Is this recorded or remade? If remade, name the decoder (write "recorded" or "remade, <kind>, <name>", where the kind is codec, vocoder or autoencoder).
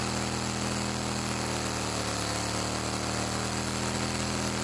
recorded